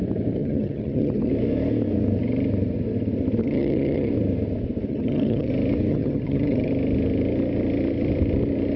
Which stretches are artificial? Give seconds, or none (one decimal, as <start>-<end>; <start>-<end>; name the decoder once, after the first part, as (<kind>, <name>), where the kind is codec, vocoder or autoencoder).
0.4-1.3 (vocoder, HiFi-GAN); 3.4-4.1; 4.9-5.5; 5.9-6.7

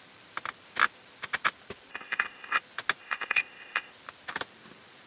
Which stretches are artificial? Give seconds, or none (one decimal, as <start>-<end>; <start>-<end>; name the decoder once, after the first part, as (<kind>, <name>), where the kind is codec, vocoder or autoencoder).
1.9-2.6 (codec, ZipCodec); 3.0-3.9